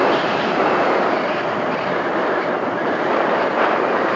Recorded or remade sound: remade